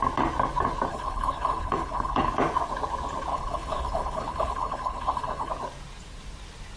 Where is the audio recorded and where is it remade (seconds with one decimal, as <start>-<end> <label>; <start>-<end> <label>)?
0.0-0.9 recorded; 0.9-2.3 remade; 2.3-3.3 recorded; 3.3-5.5 remade; 5.5-6.8 recorded